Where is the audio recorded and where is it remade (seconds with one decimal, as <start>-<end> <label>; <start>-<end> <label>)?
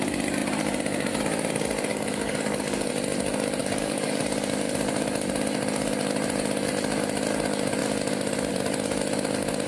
0.0-1.9 recorded; 1.9-2.9 remade; 2.9-3.6 recorded; 3.6-4.2 remade; 4.2-9.7 recorded